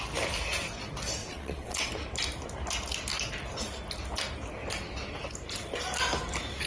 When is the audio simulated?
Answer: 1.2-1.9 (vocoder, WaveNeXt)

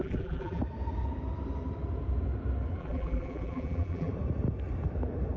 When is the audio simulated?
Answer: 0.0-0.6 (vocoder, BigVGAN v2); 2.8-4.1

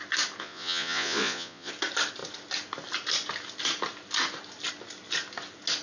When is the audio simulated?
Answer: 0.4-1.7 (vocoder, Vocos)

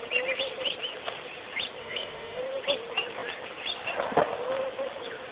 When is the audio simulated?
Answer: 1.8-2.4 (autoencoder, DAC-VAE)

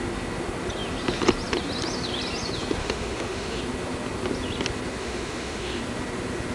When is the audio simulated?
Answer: 2.8-3.6 (autoencoder, DAC-VAE); 5.0-5.8